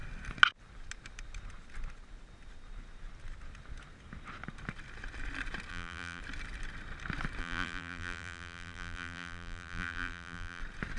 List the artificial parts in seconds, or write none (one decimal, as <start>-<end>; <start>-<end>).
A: 5.7-6.2; 7.4-10.6